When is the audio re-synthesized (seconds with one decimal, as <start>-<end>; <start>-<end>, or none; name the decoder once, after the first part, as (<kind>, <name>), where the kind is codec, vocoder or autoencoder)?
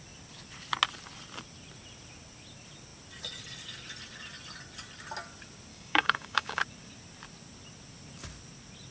5.7-6.6 (codec, DAC)